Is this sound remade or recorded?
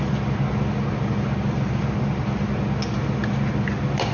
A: recorded